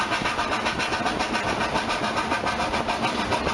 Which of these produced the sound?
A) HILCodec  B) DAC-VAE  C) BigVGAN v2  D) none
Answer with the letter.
D